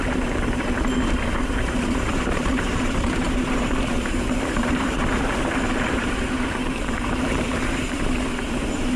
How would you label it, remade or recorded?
remade